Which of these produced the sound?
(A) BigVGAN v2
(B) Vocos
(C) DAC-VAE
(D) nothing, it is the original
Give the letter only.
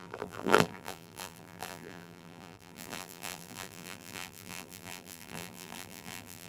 A